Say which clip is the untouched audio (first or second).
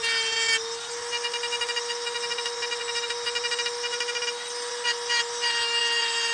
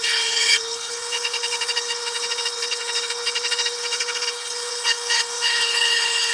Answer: first